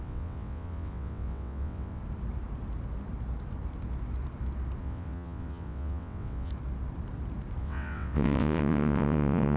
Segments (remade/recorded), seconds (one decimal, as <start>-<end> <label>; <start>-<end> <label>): 0.0-2.0 remade; 2.0-4.8 recorded; 4.8-6.5 remade; 6.5-7.6 recorded; 7.6-9.6 remade